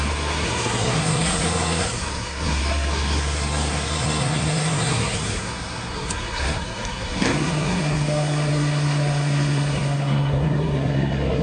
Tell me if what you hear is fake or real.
fake